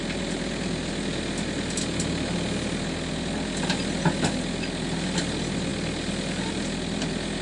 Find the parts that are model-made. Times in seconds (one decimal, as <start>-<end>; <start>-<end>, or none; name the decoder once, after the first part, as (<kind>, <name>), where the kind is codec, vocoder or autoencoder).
none